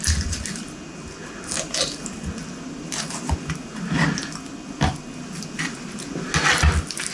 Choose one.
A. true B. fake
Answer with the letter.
A